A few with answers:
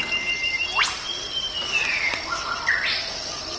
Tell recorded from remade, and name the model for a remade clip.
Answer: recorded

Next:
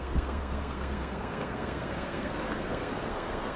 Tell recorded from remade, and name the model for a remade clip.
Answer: remade, codec, SNAC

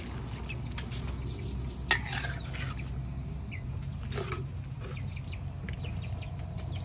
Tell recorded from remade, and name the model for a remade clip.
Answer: recorded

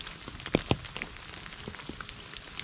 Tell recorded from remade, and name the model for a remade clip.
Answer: recorded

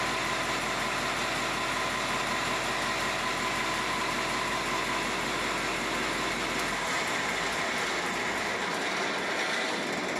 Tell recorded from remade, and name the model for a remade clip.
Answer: recorded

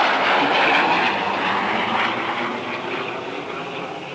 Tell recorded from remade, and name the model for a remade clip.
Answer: recorded